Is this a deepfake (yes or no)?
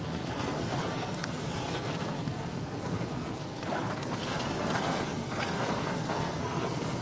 yes